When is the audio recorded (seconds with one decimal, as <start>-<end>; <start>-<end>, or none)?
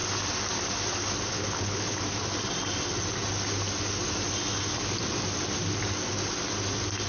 0.0-1.3; 2.0-7.1